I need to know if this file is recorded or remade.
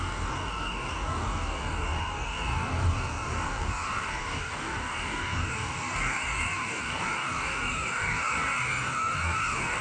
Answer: remade